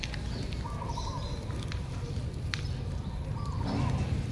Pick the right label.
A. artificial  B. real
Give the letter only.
B